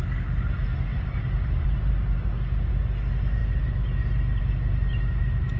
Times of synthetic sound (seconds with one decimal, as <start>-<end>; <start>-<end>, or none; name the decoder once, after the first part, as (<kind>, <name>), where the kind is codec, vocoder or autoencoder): 0.9-1.9 (vocoder, BigVGAN v2)